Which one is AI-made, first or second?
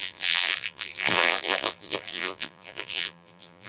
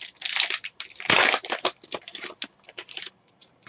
first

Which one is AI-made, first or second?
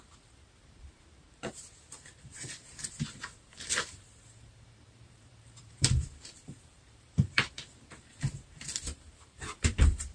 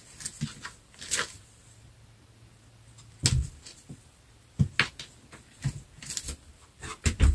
first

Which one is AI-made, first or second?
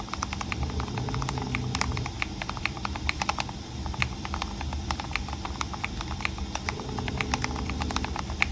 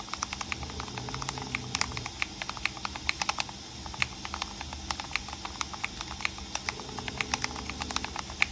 first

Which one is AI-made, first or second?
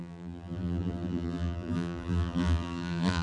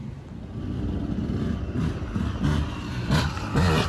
first